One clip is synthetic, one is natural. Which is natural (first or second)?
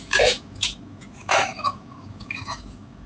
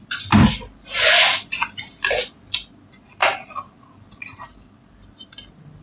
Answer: second